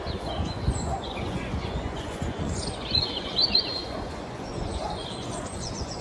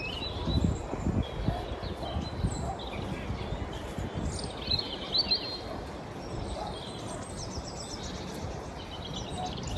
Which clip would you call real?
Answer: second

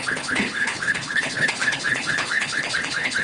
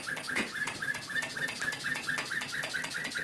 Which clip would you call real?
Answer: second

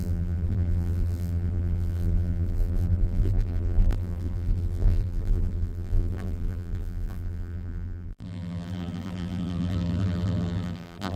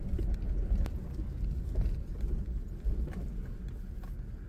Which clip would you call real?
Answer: second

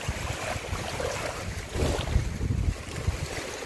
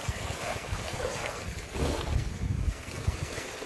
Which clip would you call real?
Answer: first